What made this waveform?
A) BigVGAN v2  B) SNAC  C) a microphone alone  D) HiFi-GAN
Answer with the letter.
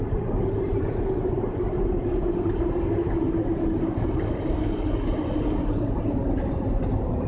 C